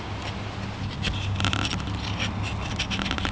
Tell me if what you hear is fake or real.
real